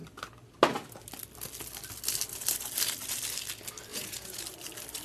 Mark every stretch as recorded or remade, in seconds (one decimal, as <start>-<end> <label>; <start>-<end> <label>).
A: 0.0-3.9 recorded; 3.9-4.4 remade; 4.4-5.0 recorded